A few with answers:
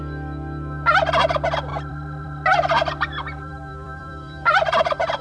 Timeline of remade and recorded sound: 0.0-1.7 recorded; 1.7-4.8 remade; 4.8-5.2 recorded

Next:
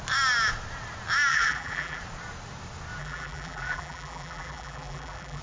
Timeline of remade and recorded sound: 0.0-1.3 recorded; 1.3-2.0 remade; 2.0-3.0 recorded; 3.0-5.4 remade

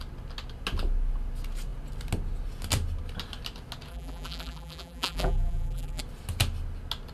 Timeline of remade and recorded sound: 0.0-3.9 recorded; 3.9-6.0 remade; 6.0-7.1 recorded

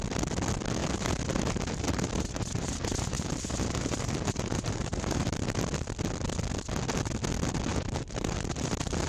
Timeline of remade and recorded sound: 0.0-0.8 recorded; 0.8-5.4 remade; 5.4-7.7 recorded; 7.7-9.1 remade

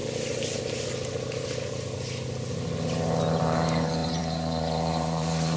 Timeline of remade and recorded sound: 0.0-3.4 recorded; 3.4-5.6 remade

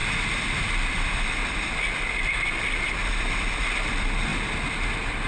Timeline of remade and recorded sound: 0.0-1.7 remade; 1.7-3.0 recorded; 3.0-3.6 remade; 3.6-5.3 recorded